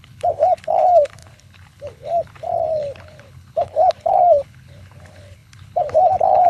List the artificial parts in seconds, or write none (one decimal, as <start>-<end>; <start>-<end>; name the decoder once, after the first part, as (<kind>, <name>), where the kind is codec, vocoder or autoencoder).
0.0-6.5 (codec, HILCodec)